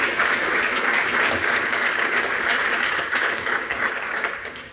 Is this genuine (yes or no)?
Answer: no